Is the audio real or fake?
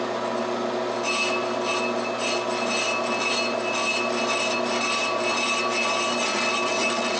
real